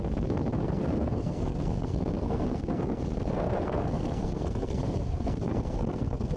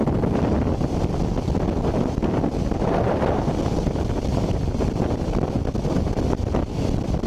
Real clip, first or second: second